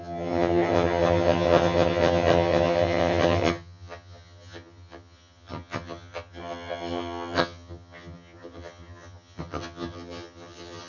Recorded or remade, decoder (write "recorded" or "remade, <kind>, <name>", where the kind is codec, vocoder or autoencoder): remade, vocoder, HiFi-GAN